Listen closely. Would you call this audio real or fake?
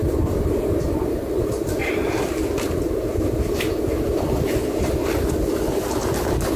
real